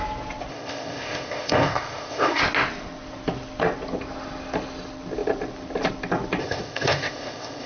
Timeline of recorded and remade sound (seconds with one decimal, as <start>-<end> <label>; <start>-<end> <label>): 0.0-0.5 recorded; 0.5-2.4 remade; 2.4-6.4 recorded; 6.4-7.7 remade